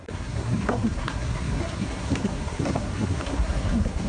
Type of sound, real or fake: fake